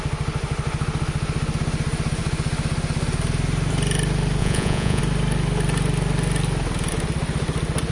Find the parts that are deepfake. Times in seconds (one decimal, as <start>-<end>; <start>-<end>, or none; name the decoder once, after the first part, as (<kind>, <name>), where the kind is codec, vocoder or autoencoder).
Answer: 4.4-5.0 (vocoder, Vocos)